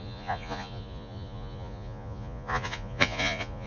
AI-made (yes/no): yes